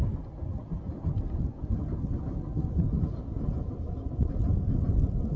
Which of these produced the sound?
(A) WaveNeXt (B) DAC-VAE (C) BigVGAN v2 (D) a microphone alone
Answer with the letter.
D